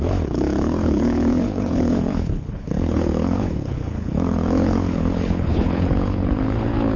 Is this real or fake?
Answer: fake